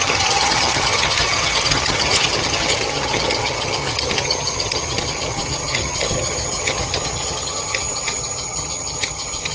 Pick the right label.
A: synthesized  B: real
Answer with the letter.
A